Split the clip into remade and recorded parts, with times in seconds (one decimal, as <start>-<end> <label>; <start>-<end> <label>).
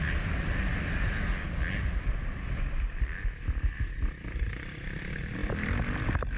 0.0-5.4 remade; 5.4-6.4 recorded